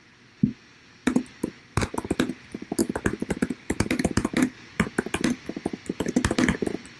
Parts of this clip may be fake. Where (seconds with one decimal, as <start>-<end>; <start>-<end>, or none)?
none